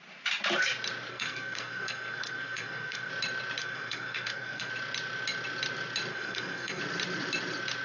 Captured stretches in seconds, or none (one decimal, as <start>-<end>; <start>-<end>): 0.0-1.1; 3.1-3.6; 4.7-6.1; 6.8-7.8

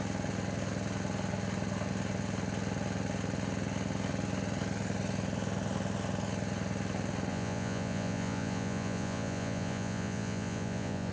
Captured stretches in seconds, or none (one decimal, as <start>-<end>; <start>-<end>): 0.0-7.3

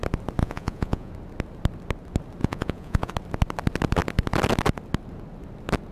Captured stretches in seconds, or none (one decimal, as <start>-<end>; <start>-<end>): 0.0-0.4; 1.1-2.4; 3.1-5.9